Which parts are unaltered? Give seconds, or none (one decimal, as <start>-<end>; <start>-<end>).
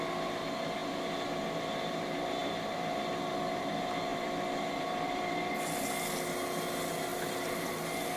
0.0-4.1; 5.4-7.1; 7.7-8.2